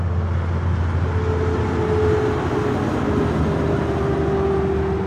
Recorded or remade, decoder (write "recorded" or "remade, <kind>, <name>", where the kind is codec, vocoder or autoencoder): recorded